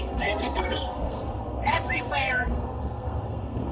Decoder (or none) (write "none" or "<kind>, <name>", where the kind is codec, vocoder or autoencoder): codec, SNAC